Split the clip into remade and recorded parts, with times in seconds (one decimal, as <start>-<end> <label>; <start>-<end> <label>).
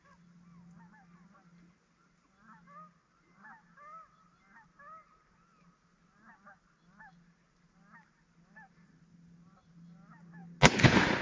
0.0-11.2 recorded